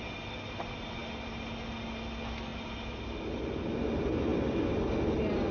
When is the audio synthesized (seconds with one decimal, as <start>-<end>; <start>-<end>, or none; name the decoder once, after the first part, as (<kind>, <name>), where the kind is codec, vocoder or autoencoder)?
none